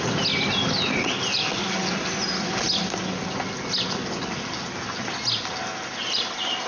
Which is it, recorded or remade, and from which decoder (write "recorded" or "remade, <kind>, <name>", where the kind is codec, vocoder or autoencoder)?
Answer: recorded